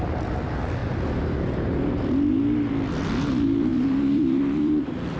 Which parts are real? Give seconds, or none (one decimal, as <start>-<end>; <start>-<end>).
0.0-3.7